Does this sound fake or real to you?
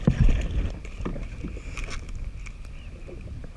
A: real